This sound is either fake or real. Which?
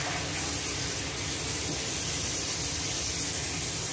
real